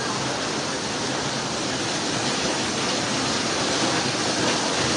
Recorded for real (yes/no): yes